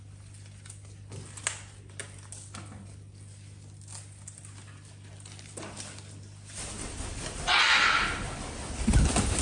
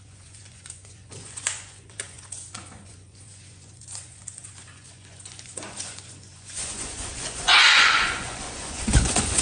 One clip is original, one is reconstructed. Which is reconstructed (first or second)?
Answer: second